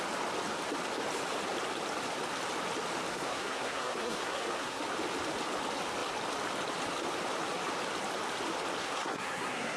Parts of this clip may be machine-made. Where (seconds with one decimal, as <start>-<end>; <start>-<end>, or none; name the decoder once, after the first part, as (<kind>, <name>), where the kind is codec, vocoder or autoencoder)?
3.1-4.8 (codec, SNAC); 8.8-9.8